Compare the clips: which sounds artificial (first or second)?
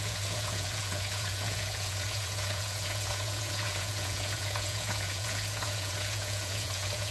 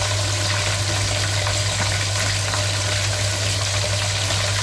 first